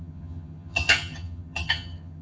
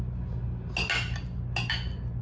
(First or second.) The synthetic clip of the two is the first